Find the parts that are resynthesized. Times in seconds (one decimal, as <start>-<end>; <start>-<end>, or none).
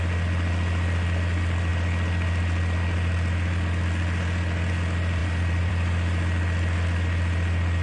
5.2-5.7